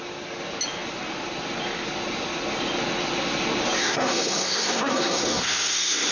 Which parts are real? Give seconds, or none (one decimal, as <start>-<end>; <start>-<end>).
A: 0.0-3.8